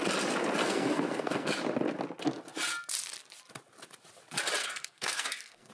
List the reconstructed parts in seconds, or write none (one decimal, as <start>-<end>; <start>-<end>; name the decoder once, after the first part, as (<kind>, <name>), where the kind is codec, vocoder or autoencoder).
0.6-1.6 (codec, SNAC); 4.6-5.7